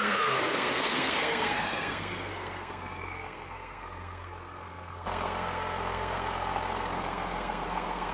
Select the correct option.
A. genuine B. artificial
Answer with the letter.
B